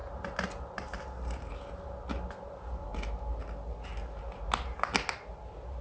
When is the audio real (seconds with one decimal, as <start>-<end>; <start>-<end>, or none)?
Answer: 0.0-5.8